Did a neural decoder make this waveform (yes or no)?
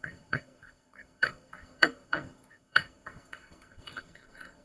yes